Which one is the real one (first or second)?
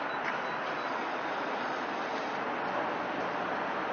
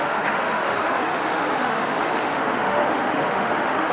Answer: first